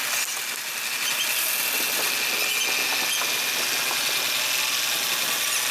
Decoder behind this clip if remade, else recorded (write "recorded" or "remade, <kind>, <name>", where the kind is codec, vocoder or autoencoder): recorded